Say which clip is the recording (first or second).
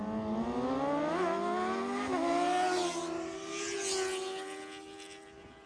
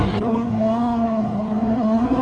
first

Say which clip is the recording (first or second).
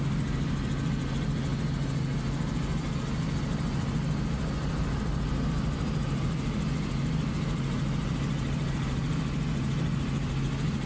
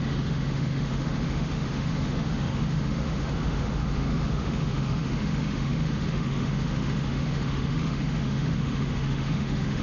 first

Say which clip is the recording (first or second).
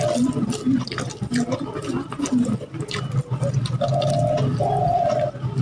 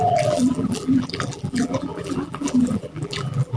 first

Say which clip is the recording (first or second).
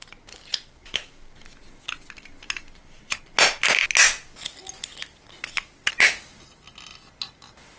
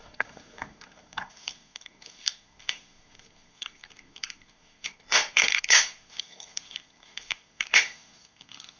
first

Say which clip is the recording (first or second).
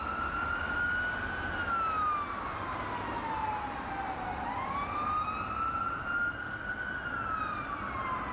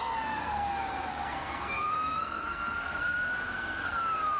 first